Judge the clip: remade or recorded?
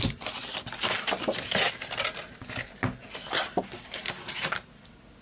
recorded